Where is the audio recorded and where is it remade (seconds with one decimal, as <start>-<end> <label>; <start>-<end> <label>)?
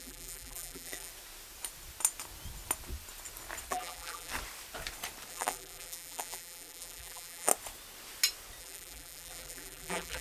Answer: 0.0-1.1 remade; 1.1-3.7 recorded; 3.7-4.3 remade; 4.3-5.3 recorded; 5.3-7.5 remade; 7.5-8.6 recorded; 8.6-10.2 remade